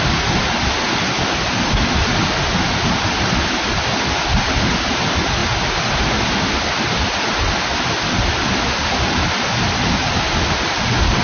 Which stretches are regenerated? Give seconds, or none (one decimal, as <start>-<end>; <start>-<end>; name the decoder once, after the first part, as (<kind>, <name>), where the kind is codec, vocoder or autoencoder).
none

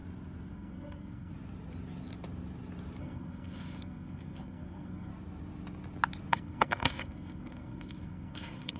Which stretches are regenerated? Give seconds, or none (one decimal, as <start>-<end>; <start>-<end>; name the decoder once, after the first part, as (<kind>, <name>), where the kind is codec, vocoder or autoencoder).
0.5-1.3 (codec, SNAC); 3.0-5.1; 6.3-8.8

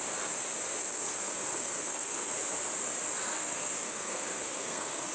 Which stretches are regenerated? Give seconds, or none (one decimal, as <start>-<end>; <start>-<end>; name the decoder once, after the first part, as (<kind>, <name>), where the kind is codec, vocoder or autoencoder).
0.8-2.3 (codec, SNAC); 3.4-5.1

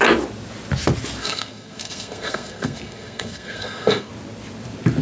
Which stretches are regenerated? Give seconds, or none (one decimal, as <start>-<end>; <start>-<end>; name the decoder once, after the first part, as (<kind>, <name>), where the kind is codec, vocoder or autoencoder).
1.2-4.1 (codec, SNAC)

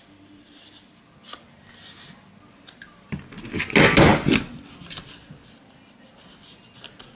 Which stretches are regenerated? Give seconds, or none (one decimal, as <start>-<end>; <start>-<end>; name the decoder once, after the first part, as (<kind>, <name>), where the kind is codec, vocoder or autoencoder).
none